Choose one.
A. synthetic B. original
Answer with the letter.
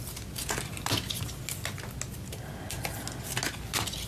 B